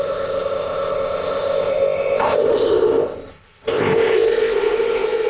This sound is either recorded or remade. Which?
remade